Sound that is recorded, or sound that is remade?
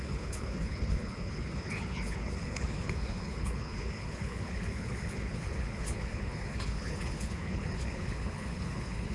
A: remade